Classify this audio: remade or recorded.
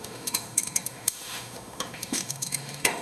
remade